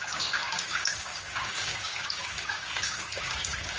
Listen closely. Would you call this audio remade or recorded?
remade